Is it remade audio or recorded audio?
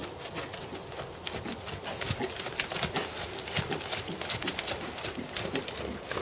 recorded